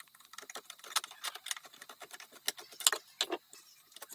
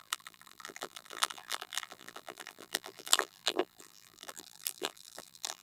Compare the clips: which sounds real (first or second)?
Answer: first